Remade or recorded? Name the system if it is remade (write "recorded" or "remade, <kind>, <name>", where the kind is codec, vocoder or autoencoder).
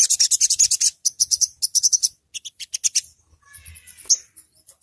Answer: recorded